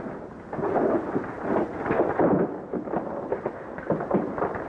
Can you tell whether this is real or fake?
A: real